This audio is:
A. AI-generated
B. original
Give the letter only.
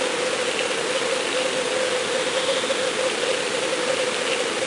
B